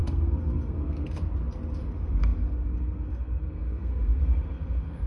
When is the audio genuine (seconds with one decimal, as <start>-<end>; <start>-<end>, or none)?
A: 1.2-1.8